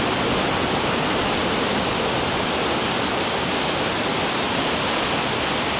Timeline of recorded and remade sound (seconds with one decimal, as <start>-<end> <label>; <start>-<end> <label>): 0.0-5.8 recorded